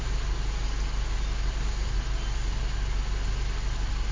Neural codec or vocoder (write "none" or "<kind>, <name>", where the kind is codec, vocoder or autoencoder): none